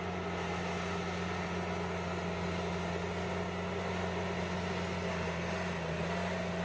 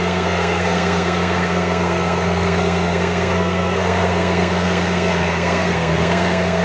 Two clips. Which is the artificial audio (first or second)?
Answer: second